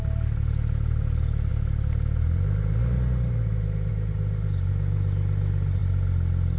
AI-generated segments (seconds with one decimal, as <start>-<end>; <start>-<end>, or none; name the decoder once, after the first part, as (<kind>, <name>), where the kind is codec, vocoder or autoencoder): none